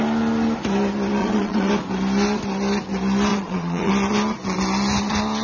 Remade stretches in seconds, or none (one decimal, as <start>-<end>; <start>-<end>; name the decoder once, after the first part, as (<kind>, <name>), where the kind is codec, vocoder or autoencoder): 1.2-1.7 (vocoder, Vocos); 3.3-3.9